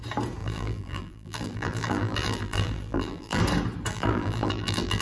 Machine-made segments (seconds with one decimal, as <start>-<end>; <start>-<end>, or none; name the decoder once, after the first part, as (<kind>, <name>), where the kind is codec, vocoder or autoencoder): 0.4-3.4 (vocoder, BigVGAN v2); 3.9-5.0